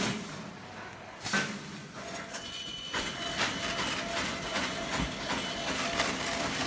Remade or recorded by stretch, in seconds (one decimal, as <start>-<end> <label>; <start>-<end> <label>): 0.0-1.8 recorded; 1.8-3.3 remade; 3.3-4.3 recorded; 4.3-5.0 remade; 5.0-6.7 recorded